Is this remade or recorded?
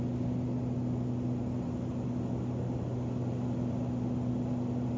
recorded